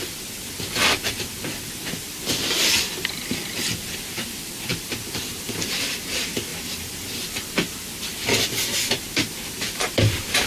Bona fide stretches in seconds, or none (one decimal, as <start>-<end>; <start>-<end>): none